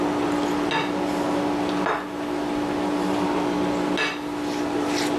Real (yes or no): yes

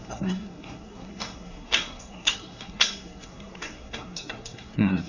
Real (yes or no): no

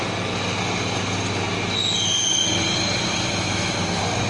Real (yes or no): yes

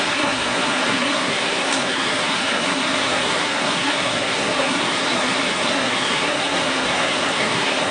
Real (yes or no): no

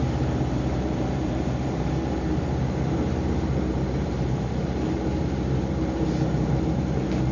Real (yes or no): no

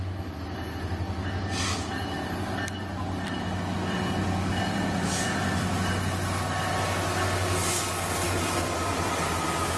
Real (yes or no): yes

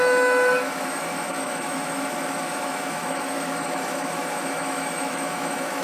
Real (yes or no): no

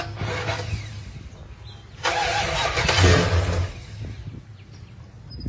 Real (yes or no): yes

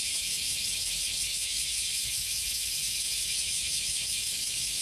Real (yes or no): no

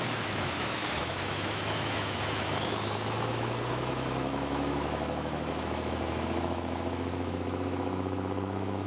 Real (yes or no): no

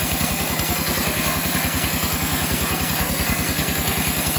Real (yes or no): no